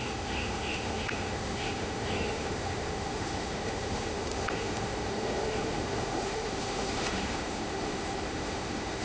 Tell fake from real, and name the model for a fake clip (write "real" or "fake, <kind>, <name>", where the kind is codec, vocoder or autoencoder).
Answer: fake, autoencoder, DAC-VAE